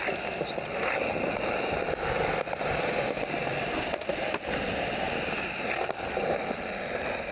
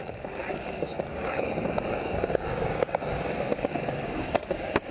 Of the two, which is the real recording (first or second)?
first